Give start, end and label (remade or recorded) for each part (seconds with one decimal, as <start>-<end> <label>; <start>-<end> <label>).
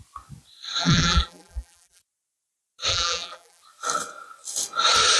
0.0-0.8 recorded; 0.8-2.0 remade; 2.0-2.9 recorded; 2.9-3.6 remade; 3.6-5.2 recorded